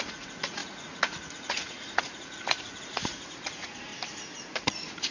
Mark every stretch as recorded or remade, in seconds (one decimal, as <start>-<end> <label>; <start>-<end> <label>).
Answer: 0.0-3.9 remade; 3.9-4.6 recorded; 4.6-5.1 remade